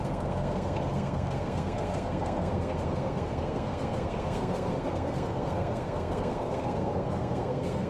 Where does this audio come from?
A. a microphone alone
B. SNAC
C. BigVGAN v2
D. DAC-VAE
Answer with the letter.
B